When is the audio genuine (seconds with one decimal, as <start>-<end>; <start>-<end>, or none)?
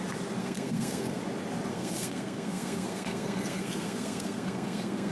0.0-0.4; 1.2-1.7